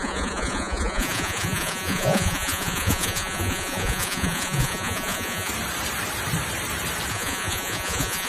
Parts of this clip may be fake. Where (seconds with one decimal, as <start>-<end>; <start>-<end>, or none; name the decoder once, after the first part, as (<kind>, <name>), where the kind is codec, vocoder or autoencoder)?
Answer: 0.0-5.5 (vocoder, Vocos); 7.1-8.3